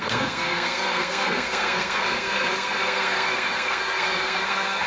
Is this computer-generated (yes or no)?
yes